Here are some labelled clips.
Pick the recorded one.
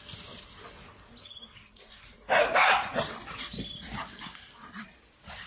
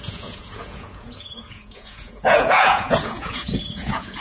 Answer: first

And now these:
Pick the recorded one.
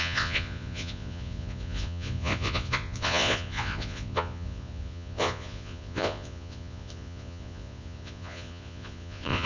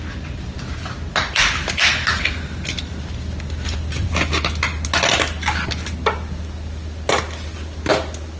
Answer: second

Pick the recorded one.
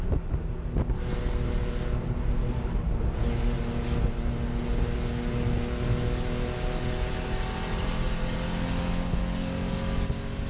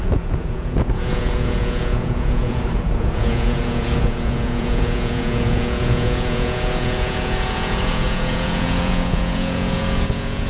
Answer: first